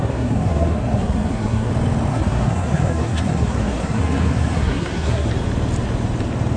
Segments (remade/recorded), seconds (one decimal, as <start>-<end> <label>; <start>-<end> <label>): 0.0-1.7 remade; 1.7-2.1 recorded; 2.1-5.3 remade; 5.3-6.6 recorded